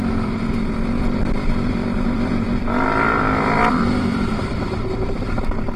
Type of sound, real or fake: fake